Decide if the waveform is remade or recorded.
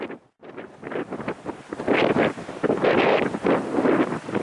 recorded